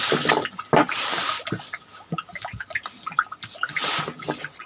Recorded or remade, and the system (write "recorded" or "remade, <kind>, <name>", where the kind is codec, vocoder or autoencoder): recorded